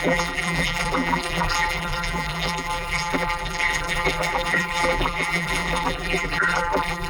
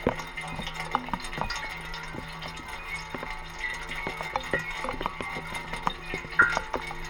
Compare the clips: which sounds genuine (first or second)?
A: second